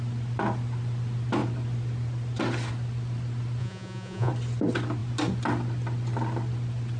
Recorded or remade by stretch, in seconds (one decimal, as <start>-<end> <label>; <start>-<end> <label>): 0.0-3.6 recorded; 3.6-4.3 remade; 4.3-7.0 recorded